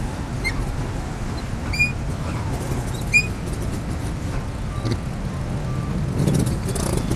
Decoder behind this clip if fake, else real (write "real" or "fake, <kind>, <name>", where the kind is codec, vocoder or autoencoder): real